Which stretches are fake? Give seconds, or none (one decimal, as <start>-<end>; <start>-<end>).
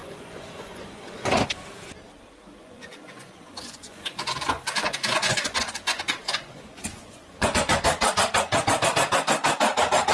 0.0-1.3; 2.6-7.8